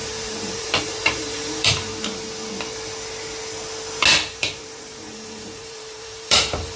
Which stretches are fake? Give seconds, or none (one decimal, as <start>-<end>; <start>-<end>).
0.0-1.9; 4.3-6.8